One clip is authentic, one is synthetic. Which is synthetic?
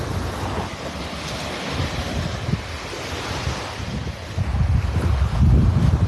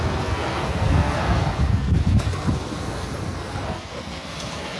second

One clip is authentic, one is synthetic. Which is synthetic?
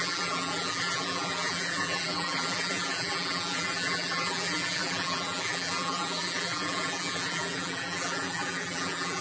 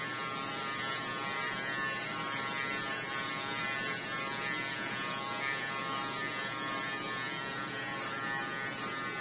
first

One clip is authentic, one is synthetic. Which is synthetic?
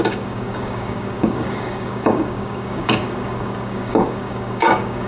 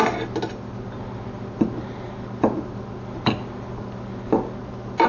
first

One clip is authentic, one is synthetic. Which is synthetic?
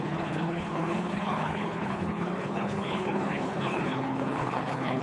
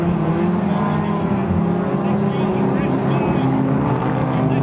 first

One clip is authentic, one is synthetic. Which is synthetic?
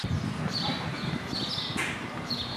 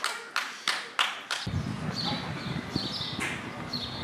first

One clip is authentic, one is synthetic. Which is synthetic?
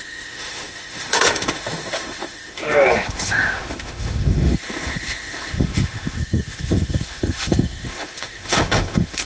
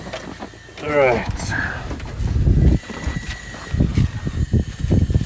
first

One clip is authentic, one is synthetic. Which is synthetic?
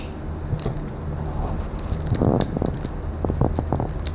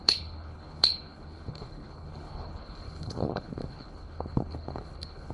second